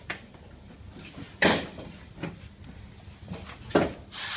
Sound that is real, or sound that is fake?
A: real